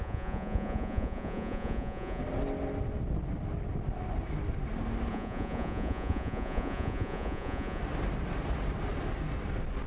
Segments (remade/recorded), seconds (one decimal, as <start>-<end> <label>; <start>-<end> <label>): 0.0-2.2 remade; 2.2-5.1 recorded; 5.1-7.8 remade; 7.8-9.9 recorded